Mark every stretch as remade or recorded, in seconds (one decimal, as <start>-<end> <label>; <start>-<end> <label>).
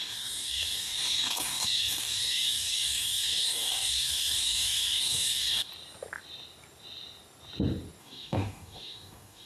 0.0-5.7 remade; 5.7-8.0 recorded; 8.0-9.5 remade